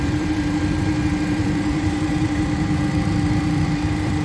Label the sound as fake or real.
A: fake